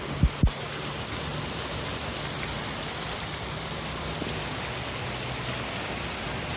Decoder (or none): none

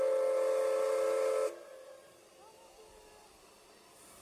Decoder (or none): none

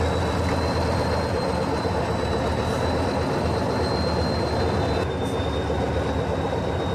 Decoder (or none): none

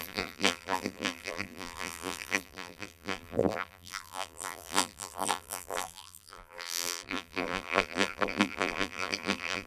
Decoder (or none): vocoder, BigVGAN v2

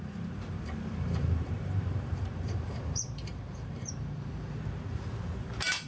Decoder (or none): vocoder, BigVGAN v2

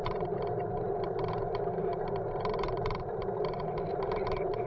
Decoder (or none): vocoder, BigVGAN v2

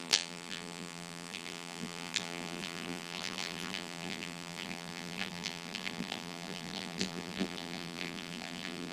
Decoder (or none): vocoder, BigVGAN v2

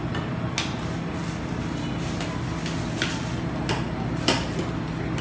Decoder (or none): none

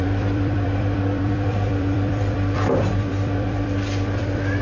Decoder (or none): vocoder, BigVGAN v2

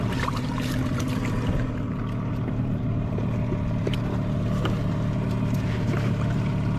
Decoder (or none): vocoder, BigVGAN v2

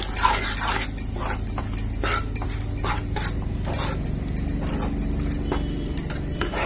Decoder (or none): none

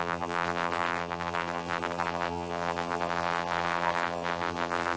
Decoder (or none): vocoder, BigVGAN v2